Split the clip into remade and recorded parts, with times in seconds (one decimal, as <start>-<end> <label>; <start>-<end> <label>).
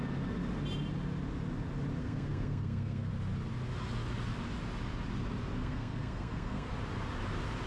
0.0-2.0 recorded; 2.0-3.1 remade; 3.1-5.6 recorded; 5.6-6.7 remade; 6.7-7.7 recorded